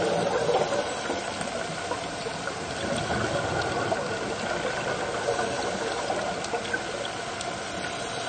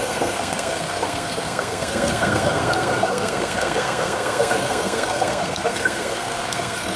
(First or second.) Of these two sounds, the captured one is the first